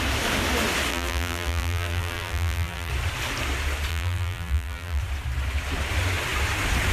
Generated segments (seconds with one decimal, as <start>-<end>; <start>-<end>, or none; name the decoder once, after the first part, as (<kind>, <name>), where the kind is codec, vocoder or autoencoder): 0.9-2.9 (vocoder, BigVGAN v2); 3.9-5.0